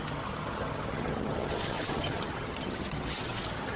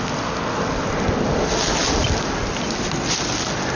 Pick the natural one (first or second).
second